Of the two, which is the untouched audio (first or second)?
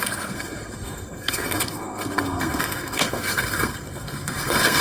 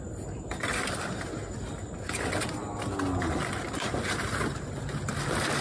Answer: second